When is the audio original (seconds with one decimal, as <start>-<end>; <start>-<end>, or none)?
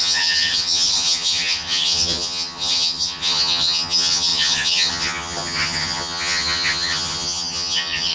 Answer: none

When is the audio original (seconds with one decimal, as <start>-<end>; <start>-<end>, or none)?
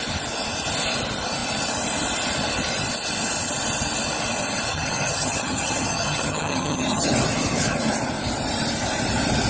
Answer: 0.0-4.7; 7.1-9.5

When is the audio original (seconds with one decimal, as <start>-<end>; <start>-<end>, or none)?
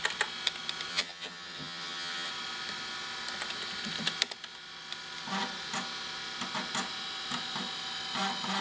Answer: 0.0-0.9; 2.3-8.6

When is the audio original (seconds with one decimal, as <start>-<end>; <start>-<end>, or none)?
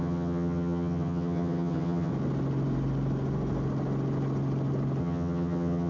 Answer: 2.1-5.0